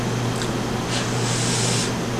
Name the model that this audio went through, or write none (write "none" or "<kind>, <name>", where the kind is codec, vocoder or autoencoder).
none